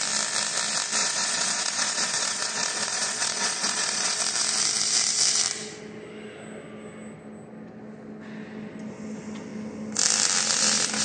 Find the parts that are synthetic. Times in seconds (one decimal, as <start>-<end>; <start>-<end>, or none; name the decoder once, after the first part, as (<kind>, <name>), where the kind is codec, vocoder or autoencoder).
1.0-4.2 (vocoder, Vocos)